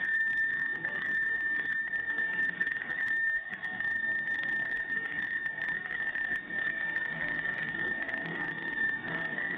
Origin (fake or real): fake